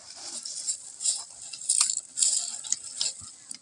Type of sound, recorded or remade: recorded